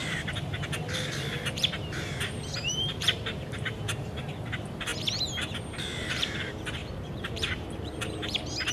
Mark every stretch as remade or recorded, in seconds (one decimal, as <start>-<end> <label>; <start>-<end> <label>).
0.0-1.3 recorded; 1.3-4.9 remade; 4.9-5.6 recorded; 5.6-8.7 remade